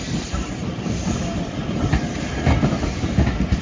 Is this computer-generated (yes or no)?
no